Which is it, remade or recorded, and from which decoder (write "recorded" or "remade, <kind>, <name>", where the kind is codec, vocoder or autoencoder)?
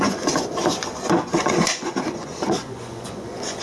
remade, vocoder, Vocos